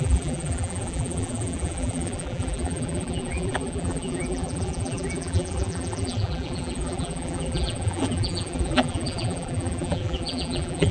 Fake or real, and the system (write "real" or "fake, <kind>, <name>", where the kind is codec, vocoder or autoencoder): fake, vocoder, BigVGAN v2